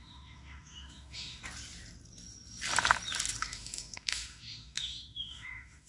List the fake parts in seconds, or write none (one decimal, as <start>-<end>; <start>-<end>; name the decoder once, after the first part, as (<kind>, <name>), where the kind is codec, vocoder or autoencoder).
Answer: 0.0-1.4 (autoencoder, DAC-VAE); 3.4-5.9